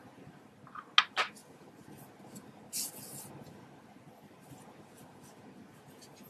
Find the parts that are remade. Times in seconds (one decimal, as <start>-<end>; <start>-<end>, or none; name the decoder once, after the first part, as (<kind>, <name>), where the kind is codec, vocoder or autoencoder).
none